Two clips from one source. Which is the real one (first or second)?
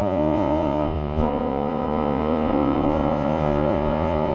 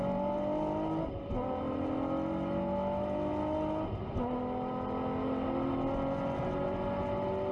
second